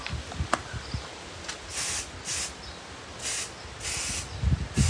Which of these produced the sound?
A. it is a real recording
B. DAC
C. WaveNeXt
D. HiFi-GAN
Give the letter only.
A